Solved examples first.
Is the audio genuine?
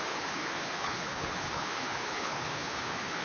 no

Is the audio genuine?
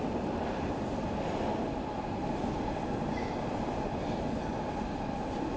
yes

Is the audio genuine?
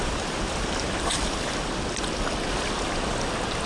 yes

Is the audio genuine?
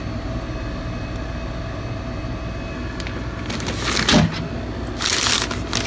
yes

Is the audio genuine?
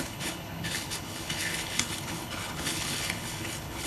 no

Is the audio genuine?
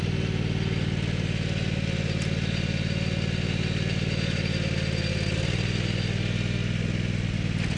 yes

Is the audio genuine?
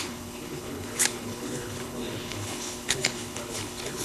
no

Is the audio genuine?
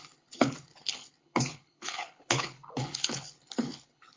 no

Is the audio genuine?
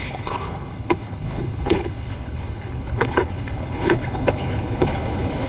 no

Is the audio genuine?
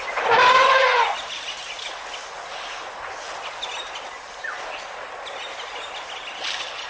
yes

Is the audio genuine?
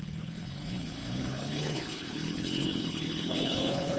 no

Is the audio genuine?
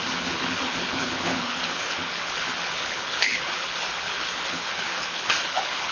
no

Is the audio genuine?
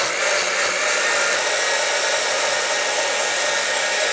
yes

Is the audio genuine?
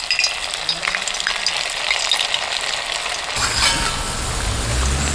yes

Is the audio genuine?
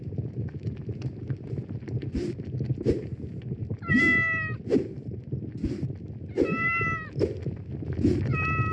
yes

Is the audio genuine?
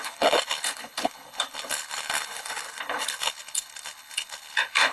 no